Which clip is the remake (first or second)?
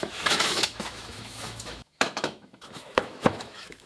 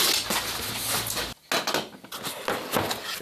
first